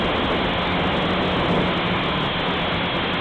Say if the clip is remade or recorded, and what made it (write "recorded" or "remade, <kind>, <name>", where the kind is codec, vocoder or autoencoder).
recorded